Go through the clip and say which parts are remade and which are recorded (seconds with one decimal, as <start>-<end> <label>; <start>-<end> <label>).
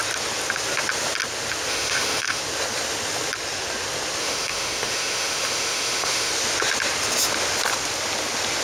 0.0-1.7 recorded; 1.7-2.4 remade; 2.4-4.2 recorded; 4.2-6.3 remade; 6.3-8.6 recorded